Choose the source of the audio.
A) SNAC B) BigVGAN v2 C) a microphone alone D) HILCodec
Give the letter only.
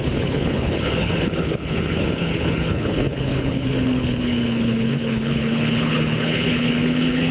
D